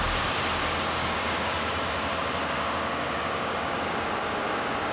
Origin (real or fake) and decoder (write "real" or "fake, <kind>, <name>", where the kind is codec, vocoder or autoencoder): fake, codec, DAC